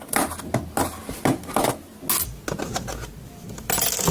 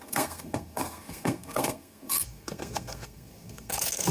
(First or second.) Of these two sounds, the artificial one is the second